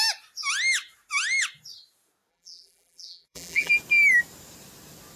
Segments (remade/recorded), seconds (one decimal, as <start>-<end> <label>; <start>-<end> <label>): 0.0-2.3 recorded; 2.3-3.7 remade; 3.7-5.2 recorded